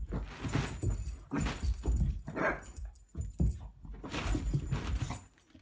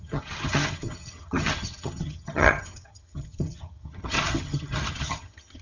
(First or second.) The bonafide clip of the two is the first